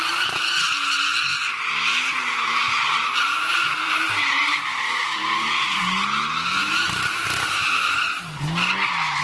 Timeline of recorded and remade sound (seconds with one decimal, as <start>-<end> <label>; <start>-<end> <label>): 0.0-2.6 recorded; 2.6-5.8 remade; 5.8-6.6 recorded; 6.6-8.4 remade; 8.4-9.2 recorded